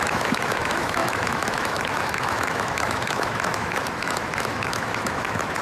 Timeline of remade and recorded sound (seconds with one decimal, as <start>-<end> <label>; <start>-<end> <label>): 0.0-5.6 remade